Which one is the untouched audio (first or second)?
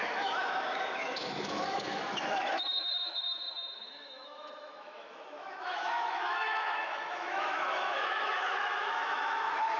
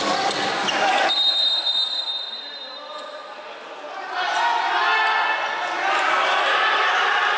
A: second